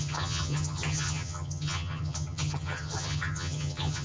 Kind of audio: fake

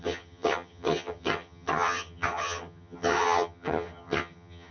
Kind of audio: fake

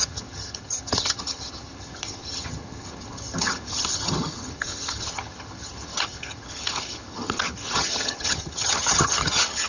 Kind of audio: fake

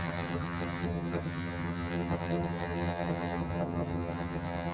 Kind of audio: fake